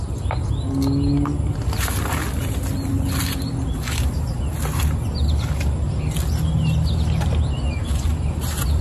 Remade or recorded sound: recorded